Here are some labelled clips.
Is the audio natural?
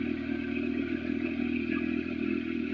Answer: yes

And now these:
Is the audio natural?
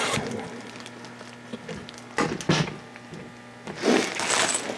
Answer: yes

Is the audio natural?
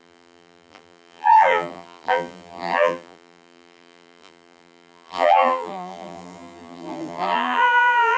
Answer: no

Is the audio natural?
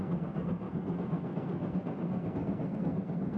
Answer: no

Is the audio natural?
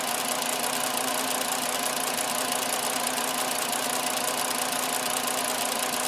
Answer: yes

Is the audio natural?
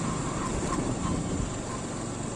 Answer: yes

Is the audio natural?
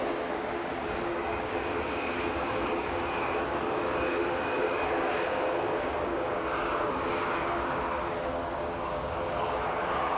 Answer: no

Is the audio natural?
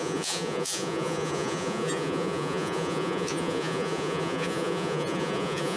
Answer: no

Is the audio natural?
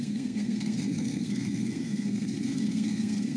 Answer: no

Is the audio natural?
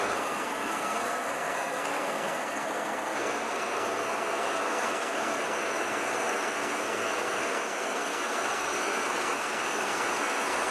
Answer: no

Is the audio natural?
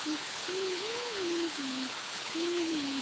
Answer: no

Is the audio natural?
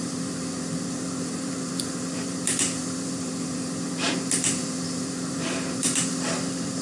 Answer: no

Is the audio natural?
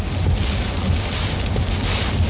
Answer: yes